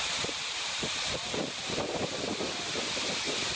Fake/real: real